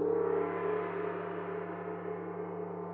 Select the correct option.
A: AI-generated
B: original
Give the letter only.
B